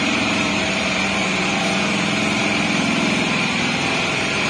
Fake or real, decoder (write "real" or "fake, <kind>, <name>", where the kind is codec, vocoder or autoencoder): fake, vocoder, BigVGAN v2